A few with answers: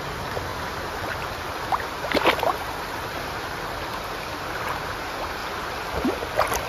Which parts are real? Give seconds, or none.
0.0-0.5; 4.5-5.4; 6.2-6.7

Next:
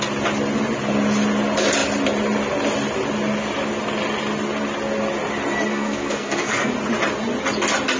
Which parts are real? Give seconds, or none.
0.0-5.7; 6.7-8.0

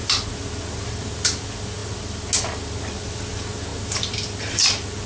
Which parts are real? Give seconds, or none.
0.0-5.1

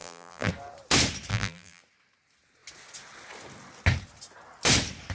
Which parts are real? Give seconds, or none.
0.5-1.3; 1.8-5.1

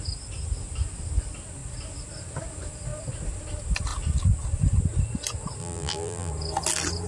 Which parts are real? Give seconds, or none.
0.0-5.6; 6.3-7.1

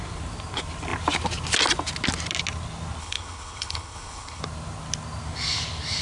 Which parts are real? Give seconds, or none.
0.0-3.0; 4.4-6.0

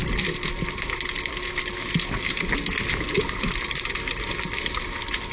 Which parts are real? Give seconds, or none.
0.0-5.3